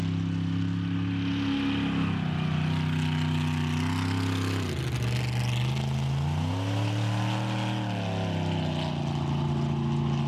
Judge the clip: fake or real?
real